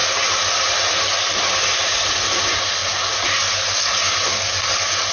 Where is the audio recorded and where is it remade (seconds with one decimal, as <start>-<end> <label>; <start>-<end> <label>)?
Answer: 0.0-5.1 recorded